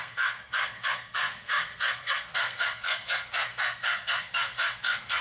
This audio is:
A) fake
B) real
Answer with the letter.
A